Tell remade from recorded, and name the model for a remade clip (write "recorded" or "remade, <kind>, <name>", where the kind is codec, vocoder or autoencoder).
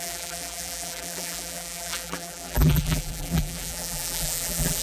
remade, vocoder, BigVGAN v2